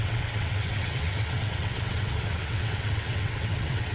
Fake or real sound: fake